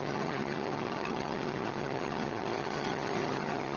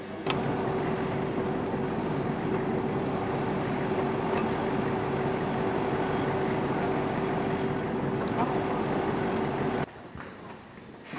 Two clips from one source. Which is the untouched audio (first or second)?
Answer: second